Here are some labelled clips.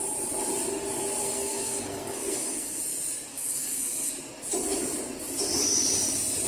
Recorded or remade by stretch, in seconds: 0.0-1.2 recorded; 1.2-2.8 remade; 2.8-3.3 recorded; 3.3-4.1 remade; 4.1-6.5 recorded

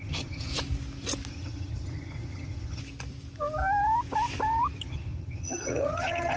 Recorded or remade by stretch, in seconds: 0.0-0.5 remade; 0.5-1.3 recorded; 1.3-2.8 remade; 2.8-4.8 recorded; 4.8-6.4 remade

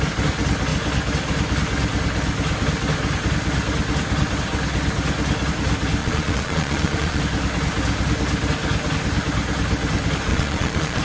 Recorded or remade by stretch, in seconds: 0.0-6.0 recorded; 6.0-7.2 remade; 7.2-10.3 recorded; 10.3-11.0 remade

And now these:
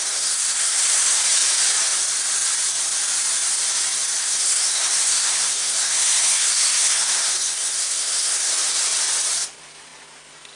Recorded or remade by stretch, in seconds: 0.0-1.2 remade; 1.2-4.2 recorded; 4.2-8.5 remade; 8.5-10.6 recorded

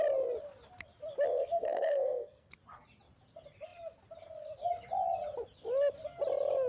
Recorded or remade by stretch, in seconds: 0.0-1.3 recorded; 1.3-2.5 remade; 2.5-6.7 recorded

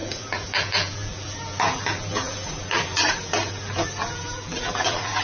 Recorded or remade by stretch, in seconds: 0.0-5.2 remade

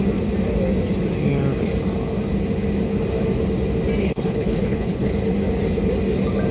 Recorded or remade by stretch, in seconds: 0.0-4.0 recorded; 4.0-5.1 remade; 5.1-6.5 recorded